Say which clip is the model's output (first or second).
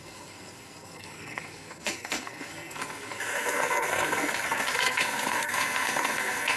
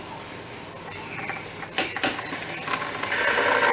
first